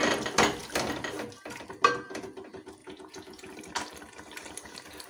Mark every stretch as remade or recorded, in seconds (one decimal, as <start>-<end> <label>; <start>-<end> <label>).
0.0-2.8 recorded; 2.8-3.5 remade; 3.5-5.1 recorded